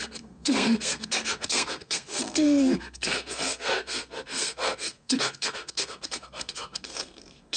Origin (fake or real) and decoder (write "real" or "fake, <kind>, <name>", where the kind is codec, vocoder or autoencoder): fake, codec, SNAC